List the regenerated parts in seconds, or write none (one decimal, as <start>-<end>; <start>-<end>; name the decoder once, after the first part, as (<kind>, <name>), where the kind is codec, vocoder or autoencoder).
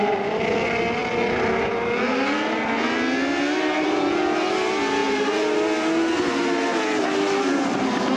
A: none